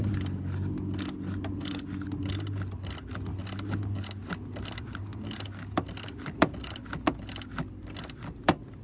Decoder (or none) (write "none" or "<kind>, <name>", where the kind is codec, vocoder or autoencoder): none